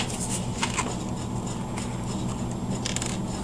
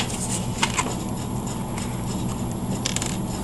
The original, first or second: first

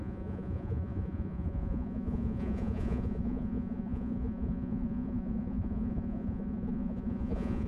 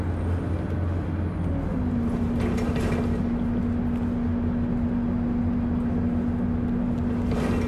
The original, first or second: second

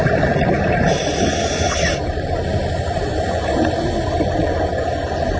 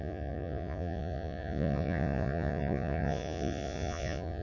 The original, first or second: first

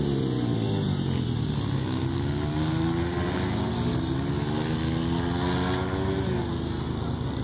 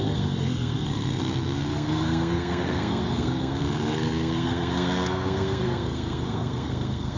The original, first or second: first